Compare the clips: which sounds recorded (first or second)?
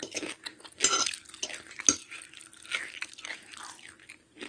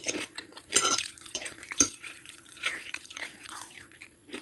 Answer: first